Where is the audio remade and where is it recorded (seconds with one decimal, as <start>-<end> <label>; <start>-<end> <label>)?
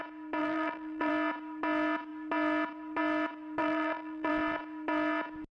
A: 0.0-0.4 recorded; 0.4-1.1 remade; 1.1-3.6 recorded; 3.6-4.3 remade; 4.3-5.5 recorded